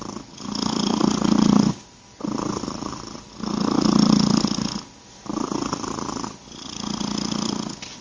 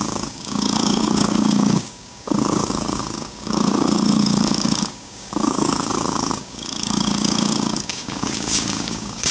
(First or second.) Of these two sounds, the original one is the first